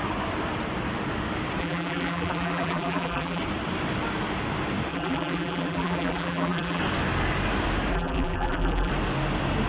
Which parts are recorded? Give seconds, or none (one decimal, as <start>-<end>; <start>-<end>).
0.0-1.6; 3.4-4.9; 6.8-7.9; 8.9-9.7